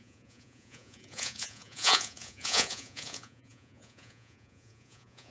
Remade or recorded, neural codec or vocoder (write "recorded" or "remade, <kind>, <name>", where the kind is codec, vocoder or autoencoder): remade, vocoder, Vocos